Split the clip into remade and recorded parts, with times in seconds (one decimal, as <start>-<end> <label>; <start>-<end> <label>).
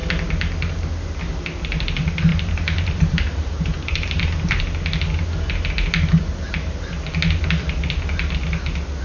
0.0-2.3 recorded; 2.3-4.6 remade; 4.6-9.0 recorded